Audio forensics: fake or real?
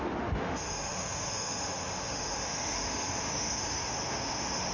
fake